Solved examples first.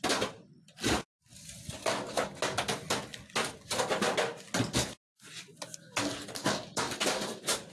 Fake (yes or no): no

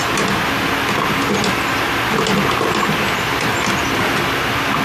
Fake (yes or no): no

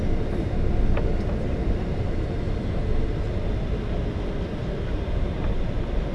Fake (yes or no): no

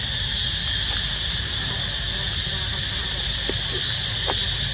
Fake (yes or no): no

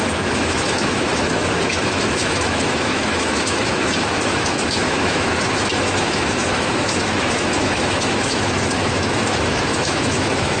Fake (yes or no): yes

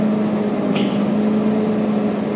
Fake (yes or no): no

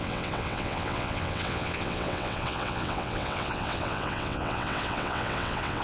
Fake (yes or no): yes